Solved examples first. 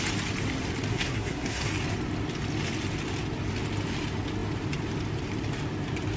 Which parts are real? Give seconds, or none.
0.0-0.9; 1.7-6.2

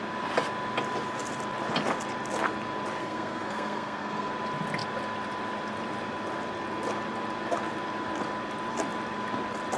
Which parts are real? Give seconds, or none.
0.0-3.0; 4.3-9.8

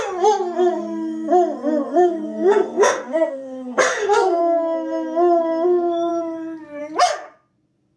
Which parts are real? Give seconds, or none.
0.0-1.9; 4.4-8.0

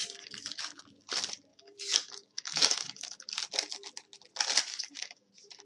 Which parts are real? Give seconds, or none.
0.6-1.5; 3.4-4.7; 5.3-5.7

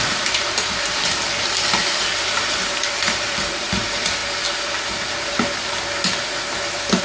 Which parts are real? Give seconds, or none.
1.1-2.4; 4.2-7.0

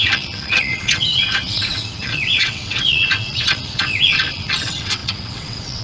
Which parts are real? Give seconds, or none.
none